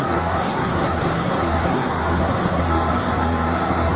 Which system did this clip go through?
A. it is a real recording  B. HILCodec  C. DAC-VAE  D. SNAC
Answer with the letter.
D